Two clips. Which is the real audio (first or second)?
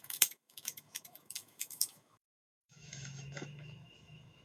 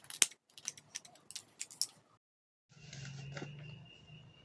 second